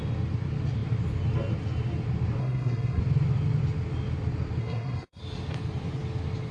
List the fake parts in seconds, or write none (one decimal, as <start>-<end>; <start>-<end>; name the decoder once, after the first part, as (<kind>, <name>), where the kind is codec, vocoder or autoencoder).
2.4-3.0 (codec, SNAC); 4.6-5.2

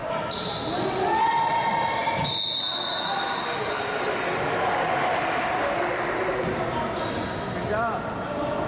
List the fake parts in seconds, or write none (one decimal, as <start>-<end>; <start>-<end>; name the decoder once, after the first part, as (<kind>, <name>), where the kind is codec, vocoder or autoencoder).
none